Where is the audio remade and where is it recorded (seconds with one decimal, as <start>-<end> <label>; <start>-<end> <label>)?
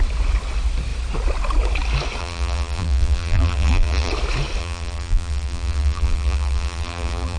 0.0-2.2 recorded; 2.2-4.1 remade; 4.1-4.6 recorded; 4.6-7.4 remade